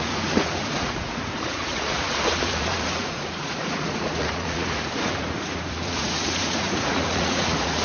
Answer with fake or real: fake